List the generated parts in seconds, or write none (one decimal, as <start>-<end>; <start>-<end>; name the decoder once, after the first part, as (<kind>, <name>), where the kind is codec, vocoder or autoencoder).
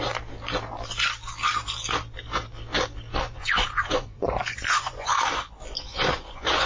3.1-5.1 (vocoder, Vocos); 5.9-6.7